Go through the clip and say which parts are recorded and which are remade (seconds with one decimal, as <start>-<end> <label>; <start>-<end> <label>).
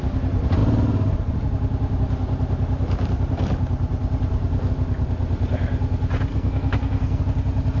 0.0-6.3 recorded; 6.3-7.2 remade; 7.2-7.8 recorded